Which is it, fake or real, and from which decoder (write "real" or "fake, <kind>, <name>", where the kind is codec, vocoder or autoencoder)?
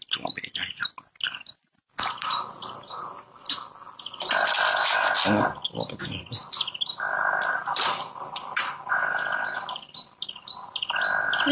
real